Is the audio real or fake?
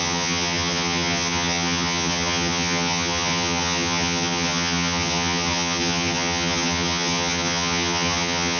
fake